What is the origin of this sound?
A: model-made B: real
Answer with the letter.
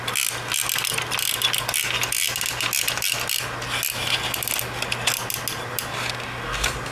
B